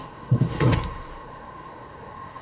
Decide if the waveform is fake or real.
fake